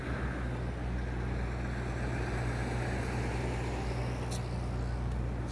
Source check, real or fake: real